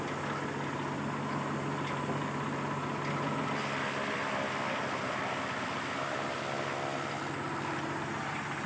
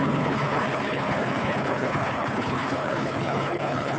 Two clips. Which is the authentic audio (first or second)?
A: first